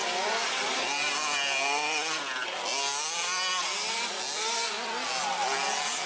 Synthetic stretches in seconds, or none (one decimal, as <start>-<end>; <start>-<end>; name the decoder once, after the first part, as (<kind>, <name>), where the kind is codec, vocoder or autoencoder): none